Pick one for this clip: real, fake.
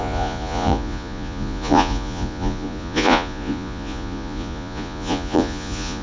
fake